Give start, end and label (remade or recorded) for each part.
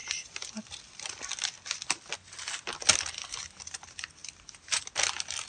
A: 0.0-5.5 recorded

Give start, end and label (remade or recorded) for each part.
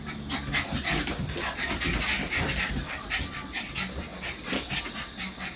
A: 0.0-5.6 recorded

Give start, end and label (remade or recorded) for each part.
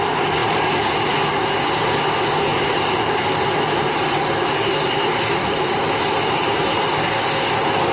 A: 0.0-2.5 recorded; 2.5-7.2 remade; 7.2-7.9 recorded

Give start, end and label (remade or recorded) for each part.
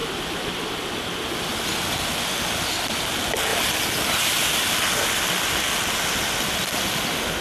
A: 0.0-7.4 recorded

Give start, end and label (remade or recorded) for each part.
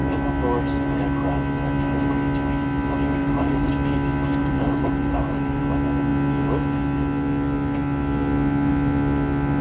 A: 0.0-3.2 recorded; 3.2-3.7 remade; 3.7-4.4 recorded; 4.4-5.6 remade; 5.6-9.6 recorded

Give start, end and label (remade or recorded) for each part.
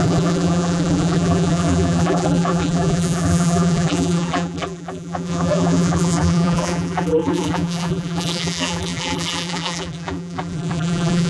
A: 0.0-11.3 remade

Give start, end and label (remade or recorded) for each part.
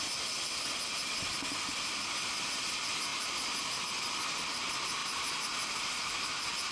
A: 0.0-3.1 recorded; 3.1-3.8 remade; 3.8-5.0 recorded; 5.0-6.1 remade; 6.1-6.7 recorded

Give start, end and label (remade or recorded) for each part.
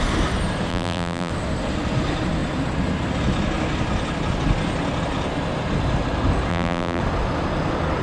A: 0.0-0.7 recorded; 0.7-1.3 remade; 1.3-6.5 recorded; 6.5-7.0 remade; 7.0-8.0 recorded